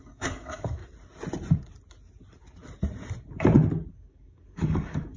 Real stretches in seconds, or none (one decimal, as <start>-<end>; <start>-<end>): 0.8-3.9